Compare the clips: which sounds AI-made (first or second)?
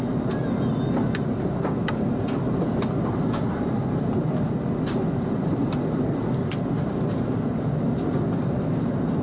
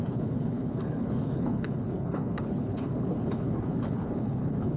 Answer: second